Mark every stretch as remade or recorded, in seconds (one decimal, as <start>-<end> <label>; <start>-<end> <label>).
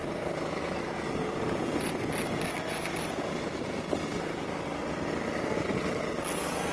0.0-1.6 remade; 1.6-6.7 recorded